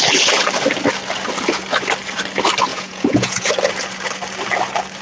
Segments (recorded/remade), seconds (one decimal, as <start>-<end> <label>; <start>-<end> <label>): 0.0-2.7 recorded; 2.7-3.5 remade; 3.5-5.0 recorded